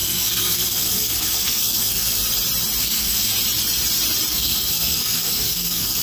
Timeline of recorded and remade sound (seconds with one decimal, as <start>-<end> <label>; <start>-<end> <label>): 0.0-2.2 remade; 2.2-2.8 recorded; 2.8-3.3 remade; 3.3-4.3 recorded; 4.3-6.0 remade